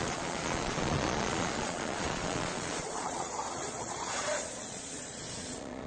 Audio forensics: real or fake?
fake